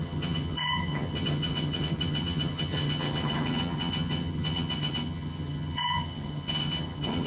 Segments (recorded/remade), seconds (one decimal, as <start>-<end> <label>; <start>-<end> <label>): 0.0-7.3 remade